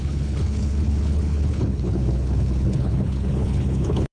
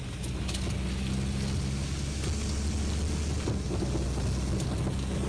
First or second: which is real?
second